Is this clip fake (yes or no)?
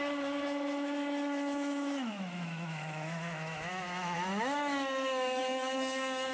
yes